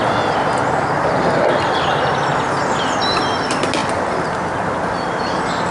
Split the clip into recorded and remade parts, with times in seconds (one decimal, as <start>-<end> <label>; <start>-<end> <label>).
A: 0.0-5.7 recorded